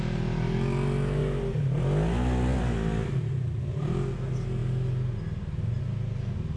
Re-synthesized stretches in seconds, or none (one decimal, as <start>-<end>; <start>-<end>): none

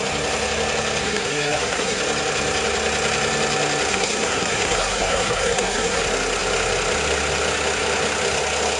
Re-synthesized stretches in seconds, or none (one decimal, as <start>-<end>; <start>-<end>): 1.0-2.0; 3.9-6.0

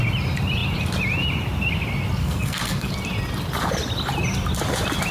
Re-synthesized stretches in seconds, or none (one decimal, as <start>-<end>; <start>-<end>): 2.2-2.9

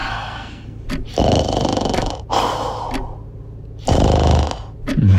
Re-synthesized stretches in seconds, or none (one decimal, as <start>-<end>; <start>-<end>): 0.0-0.8

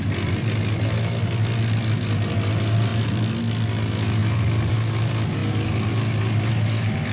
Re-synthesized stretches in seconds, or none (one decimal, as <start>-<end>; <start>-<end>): 4.2-4.9

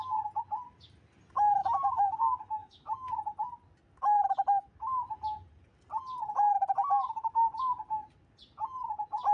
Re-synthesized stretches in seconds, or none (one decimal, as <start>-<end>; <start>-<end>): 1.6-2.2; 2.6-3.2